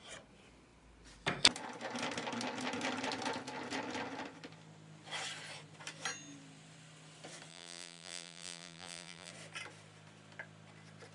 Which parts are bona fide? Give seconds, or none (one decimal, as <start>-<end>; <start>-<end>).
0.0-7.5; 9.3-11.1